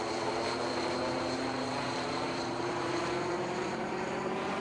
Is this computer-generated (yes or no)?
yes